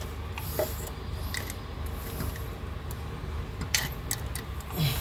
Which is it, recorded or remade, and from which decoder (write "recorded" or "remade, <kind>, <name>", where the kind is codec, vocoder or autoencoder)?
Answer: recorded